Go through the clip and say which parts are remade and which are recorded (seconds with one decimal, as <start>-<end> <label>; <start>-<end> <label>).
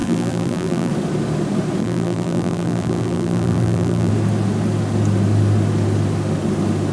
0.0-0.9 remade; 0.9-1.8 recorded; 1.8-4.1 remade; 4.1-6.9 recorded